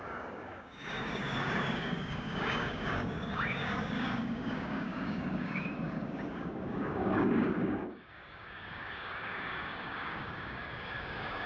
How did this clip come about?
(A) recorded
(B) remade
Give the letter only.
B